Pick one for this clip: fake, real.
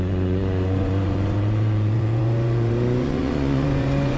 fake